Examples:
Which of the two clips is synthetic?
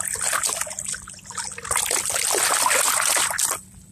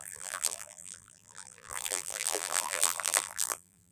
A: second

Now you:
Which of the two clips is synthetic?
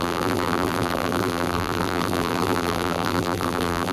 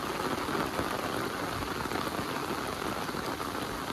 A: first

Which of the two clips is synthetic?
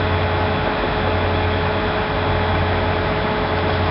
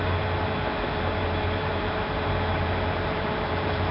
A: second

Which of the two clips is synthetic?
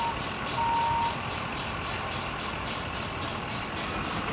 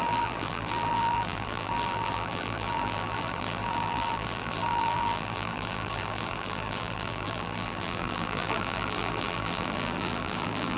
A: second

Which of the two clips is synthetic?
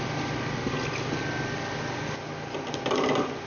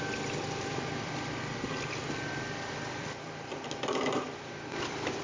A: second